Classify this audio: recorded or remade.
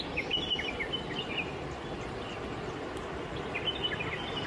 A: recorded